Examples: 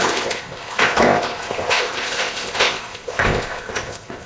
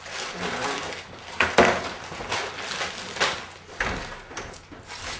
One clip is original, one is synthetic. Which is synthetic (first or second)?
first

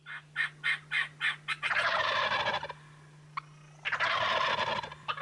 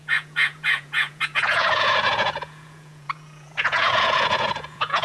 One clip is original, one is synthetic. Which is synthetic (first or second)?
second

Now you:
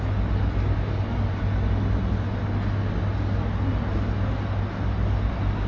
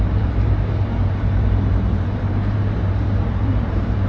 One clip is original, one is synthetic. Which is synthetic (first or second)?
second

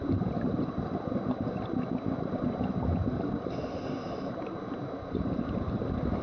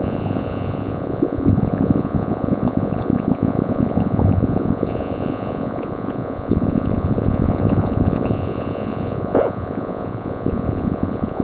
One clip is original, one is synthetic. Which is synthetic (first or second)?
second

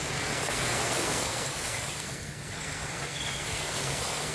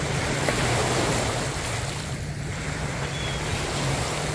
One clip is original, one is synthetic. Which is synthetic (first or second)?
first